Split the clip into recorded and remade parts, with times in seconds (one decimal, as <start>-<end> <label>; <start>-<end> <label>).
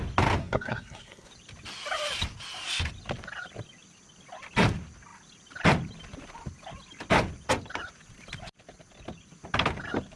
0.0-0.4 recorded; 0.4-1.3 remade; 1.3-10.2 recorded